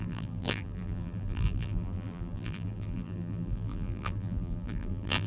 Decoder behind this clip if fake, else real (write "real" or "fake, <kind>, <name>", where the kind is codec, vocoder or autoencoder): fake, vocoder, BigVGAN v2